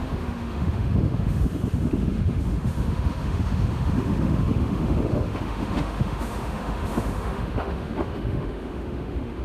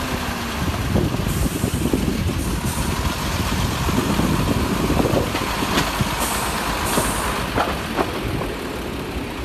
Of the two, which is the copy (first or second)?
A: first